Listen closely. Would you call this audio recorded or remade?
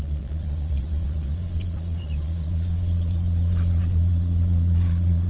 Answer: remade